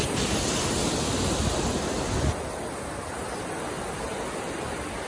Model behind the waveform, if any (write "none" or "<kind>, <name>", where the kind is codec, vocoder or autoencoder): none